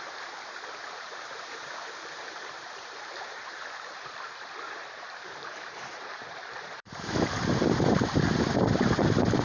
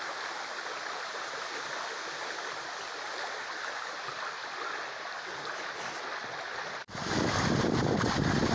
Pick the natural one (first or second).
second